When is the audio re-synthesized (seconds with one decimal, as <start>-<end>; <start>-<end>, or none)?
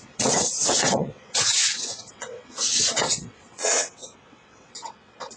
0.0-5.4